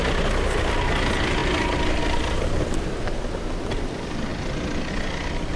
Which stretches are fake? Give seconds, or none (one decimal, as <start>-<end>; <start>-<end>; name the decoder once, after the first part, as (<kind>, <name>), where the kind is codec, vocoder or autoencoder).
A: 1.4-2.0 (vocoder, BigVGAN v2)